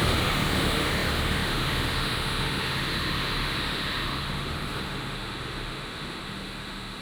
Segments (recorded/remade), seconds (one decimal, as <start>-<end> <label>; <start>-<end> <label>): 0.0-7.0 remade